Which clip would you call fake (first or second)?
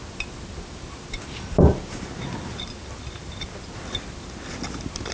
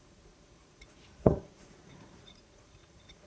second